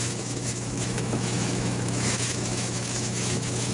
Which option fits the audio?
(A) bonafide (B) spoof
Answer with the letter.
B